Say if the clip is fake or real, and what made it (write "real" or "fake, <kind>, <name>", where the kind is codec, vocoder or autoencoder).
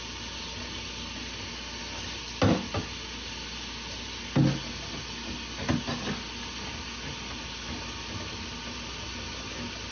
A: real